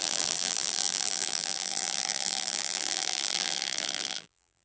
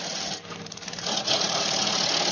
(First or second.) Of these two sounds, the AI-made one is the first